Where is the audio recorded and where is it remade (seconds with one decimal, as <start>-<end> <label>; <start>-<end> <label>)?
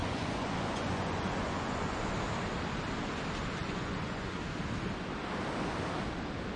0.0-2.1 remade; 2.1-3.6 recorded; 3.6-4.4 remade; 4.4-6.6 recorded